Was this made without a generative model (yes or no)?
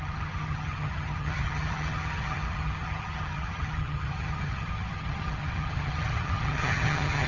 no